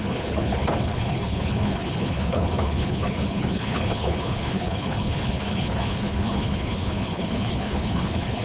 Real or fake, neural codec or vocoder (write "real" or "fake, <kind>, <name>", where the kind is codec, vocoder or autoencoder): fake, codec, HILCodec